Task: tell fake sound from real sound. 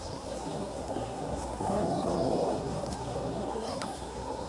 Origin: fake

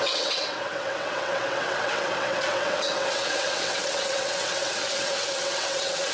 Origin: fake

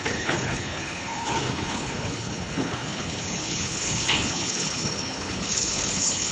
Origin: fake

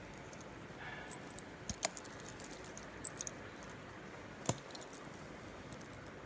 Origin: real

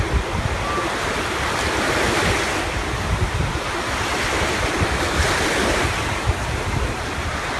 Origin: real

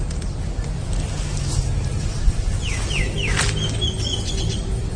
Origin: real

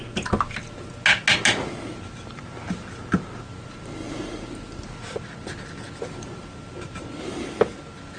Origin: real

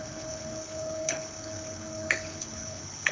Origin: fake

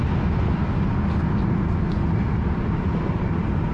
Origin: real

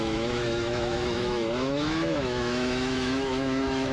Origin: fake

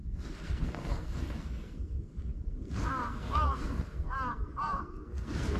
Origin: fake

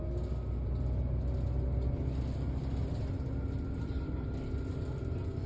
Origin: real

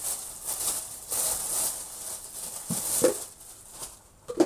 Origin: real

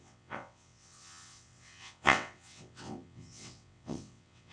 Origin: fake